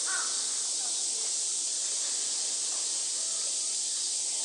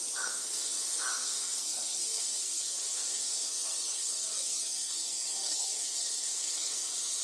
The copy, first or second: second